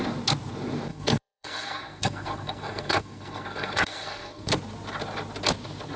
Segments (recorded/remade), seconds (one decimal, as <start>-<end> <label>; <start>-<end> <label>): 0.0-0.9 recorded; 0.9-4.5 remade; 4.5-6.0 recorded

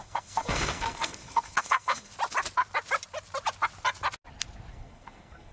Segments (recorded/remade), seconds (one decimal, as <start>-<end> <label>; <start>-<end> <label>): 0.0-2.1 remade; 2.1-4.7 recorded; 4.7-5.5 remade

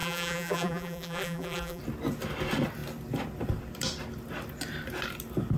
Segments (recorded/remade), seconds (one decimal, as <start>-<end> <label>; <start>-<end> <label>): 0.0-1.8 remade; 1.8-5.6 recorded

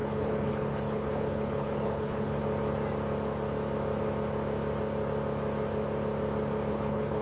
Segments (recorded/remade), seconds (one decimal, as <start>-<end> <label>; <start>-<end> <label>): 0.0-2.4 remade; 2.4-6.7 recorded; 6.7-7.2 remade

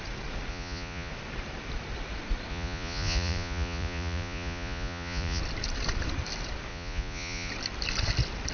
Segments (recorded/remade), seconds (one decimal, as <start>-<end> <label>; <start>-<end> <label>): 0.0-0.5 recorded; 0.5-1.1 remade; 1.1-2.5 recorded; 2.5-5.4 remade; 5.4-6.7 recorded; 6.7-7.5 remade; 7.5-8.5 recorded

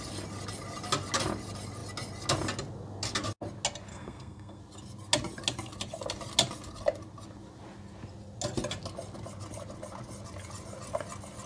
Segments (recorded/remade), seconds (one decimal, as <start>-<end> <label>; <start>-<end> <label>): 0.0-3.9 recorded; 3.9-4.6 remade; 4.6-11.5 recorded